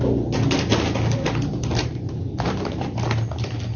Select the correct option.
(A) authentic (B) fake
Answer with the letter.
A